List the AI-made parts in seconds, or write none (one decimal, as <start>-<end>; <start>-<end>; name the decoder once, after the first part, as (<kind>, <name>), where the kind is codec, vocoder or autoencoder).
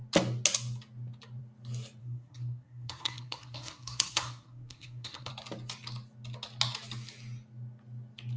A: 2.0-5.3 (codec, SNAC)